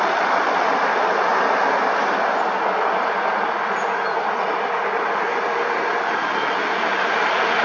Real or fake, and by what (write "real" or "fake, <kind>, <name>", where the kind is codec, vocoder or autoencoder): real